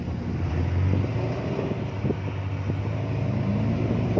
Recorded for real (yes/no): yes